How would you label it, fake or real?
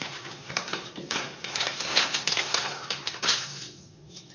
fake